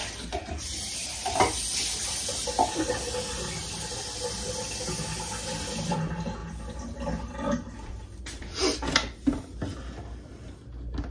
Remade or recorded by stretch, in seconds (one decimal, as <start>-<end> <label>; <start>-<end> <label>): 0.0-1.6 remade; 1.6-3.6 recorded; 3.6-4.6 remade; 4.6-11.1 recorded